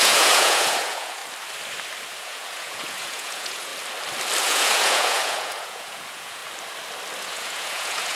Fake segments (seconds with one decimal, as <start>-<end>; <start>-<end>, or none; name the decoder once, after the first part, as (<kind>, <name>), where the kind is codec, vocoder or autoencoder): 0.0-1.2 (vocoder, Vocos); 2.2-3.7; 4.4-6.4; 7.2-8.2

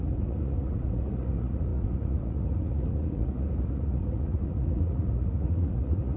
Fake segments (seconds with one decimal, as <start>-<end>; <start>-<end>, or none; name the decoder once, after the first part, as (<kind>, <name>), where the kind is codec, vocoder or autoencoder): 0.0-6.2 (vocoder, Vocos)

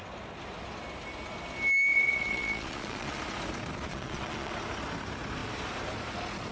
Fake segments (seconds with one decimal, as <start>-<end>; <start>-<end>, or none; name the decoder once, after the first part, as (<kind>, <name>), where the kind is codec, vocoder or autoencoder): 1.9-3.2 (vocoder, Vocos); 3.9-4.5

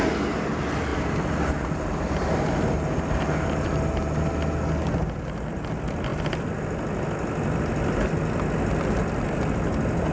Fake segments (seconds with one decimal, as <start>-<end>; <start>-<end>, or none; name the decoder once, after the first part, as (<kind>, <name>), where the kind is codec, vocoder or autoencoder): 0.9-4.3 (vocoder, BigVGAN v2)